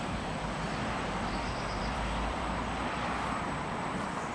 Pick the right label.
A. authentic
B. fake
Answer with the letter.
B